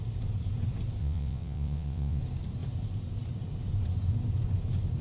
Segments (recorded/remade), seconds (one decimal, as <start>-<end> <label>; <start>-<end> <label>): 0.0-1.0 recorded; 1.0-2.2 remade; 2.2-5.0 recorded